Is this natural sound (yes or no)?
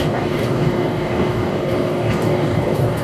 no